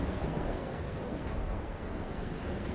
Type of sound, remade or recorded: remade